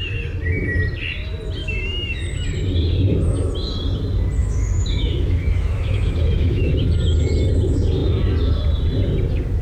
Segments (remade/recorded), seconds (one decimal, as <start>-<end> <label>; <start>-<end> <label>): 0.0-1.6 recorded; 1.6-2.2 remade; 2.2-4.4 recorded; 4.4-6.7 remade; 6.7-9.6 recorded